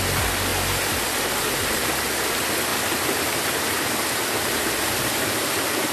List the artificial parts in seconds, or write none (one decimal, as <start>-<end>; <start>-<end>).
0.5-1.6